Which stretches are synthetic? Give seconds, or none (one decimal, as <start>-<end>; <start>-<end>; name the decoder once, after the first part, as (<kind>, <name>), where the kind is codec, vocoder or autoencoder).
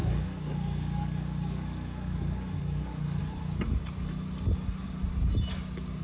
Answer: 0.0-3.2 (codec, DAC)